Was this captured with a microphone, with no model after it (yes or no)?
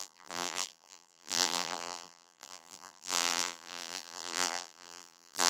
no